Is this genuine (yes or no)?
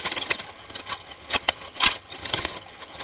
no